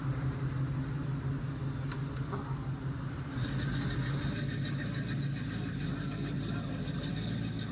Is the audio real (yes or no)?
yes